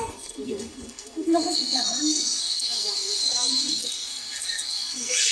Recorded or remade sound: remade